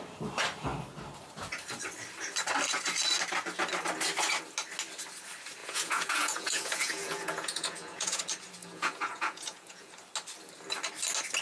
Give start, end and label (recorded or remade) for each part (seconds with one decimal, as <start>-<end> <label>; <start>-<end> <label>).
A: 0.0-5.6 recorded; 5.6-8.2 remade; 8.2-8.6 recorded; 8.6-9.9 remade; 9.9-11.4 recorded